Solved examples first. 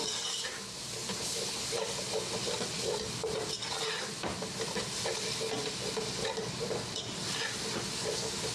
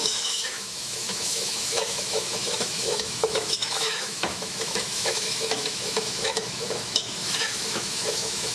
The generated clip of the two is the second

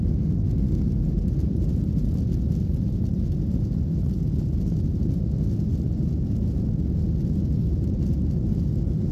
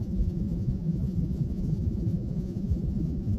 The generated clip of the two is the second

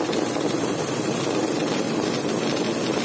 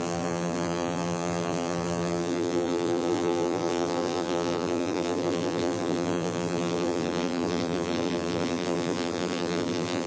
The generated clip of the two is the second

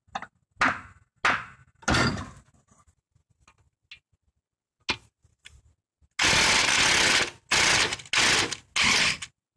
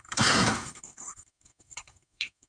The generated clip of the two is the second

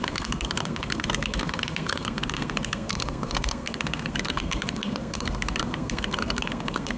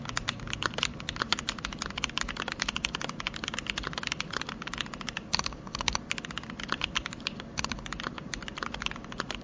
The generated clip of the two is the first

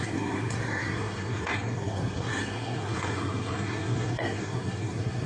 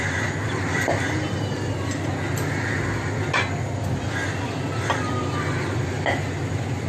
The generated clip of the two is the first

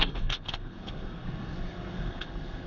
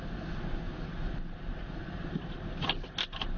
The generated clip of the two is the first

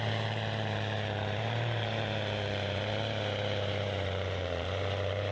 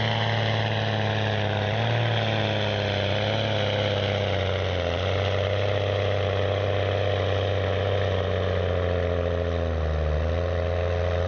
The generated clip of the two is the first